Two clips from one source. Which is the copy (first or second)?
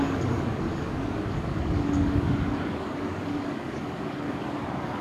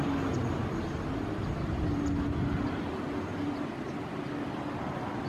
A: first